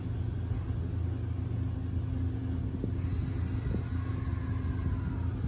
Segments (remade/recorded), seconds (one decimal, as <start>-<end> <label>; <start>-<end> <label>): 0.0-5.5 recorded